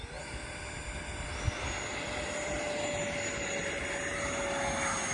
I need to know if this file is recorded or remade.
recorded